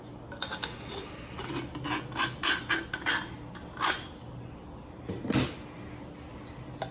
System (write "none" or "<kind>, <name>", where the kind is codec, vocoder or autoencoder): none